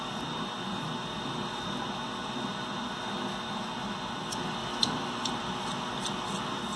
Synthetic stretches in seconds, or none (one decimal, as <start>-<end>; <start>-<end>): none